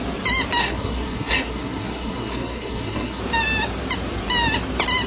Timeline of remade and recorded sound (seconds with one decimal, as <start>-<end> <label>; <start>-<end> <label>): 0.0-0.6 recorded; 0.6-3.2 remade; 3.2-5.1 recorded